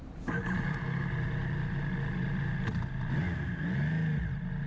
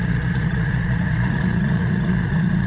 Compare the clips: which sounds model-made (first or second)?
second